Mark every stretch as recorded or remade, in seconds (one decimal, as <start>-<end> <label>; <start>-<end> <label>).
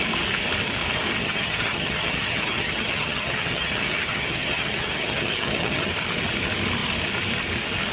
0.0-1.2 recorded; 1.2-5.9 remade; 5.9-7.9 recorded